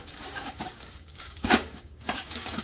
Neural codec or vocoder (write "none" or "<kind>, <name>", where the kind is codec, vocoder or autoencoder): codec, DAC